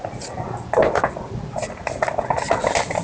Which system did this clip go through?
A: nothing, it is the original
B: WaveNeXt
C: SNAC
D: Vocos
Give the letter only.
A